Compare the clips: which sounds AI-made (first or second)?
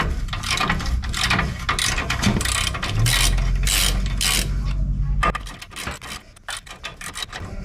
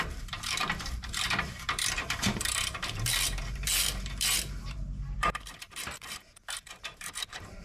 second